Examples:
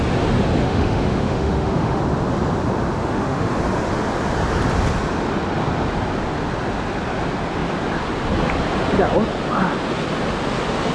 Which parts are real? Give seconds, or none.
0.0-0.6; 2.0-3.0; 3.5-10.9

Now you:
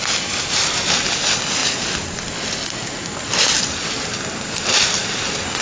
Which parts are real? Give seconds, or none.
0.0-5.6

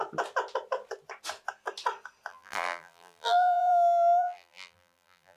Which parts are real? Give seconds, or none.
0.0-2.3